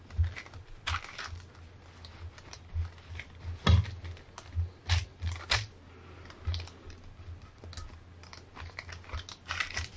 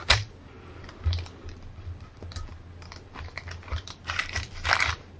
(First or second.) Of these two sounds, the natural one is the first